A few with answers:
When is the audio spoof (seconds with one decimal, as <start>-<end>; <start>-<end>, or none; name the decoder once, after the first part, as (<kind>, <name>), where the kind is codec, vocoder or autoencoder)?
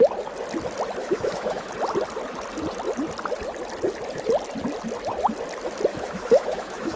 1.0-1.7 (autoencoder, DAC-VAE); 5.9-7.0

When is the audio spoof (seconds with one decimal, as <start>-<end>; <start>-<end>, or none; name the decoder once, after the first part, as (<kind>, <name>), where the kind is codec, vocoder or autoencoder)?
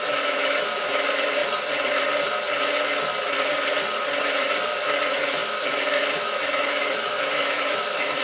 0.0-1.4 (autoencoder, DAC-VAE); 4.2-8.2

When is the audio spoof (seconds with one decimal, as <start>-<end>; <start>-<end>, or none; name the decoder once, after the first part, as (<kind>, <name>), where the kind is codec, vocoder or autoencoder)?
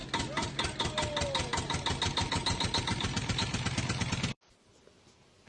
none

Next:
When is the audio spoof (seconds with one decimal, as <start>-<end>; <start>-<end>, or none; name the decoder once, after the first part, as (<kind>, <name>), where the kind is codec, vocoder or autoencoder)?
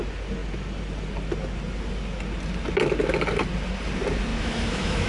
4.3-5.1 (autoencoder, DAC-VAE)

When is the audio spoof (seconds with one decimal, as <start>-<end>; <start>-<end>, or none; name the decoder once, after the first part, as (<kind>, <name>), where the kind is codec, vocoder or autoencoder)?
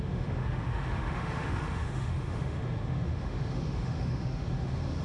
0.0-5.0 (autoencoder, DAC-VAE)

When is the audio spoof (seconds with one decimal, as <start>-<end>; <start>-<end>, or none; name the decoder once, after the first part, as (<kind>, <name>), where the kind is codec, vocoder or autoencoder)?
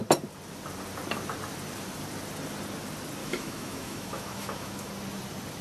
3.2-4.9 (autoencoder, DAC-VAE)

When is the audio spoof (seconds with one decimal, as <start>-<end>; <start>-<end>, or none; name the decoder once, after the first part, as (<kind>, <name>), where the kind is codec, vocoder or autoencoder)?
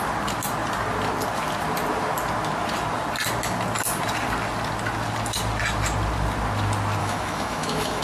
7.0-8.0 (autoencoder, DAC-VAE)